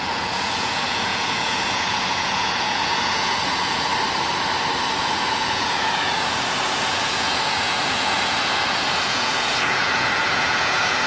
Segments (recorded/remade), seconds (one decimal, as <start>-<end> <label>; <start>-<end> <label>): 0.0-3.9 remade; 3.9-5.0 recorded; 5.0-11.1 remade